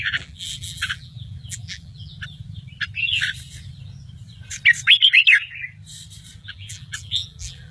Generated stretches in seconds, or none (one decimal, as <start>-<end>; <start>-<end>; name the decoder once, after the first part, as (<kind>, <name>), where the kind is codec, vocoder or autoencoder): 0.0-2.1 (vocoder, BigVGAN v2); 6.4-7.7